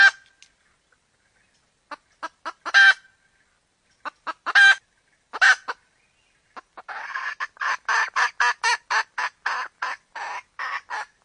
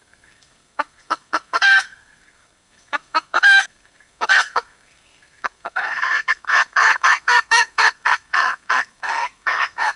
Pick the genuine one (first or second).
first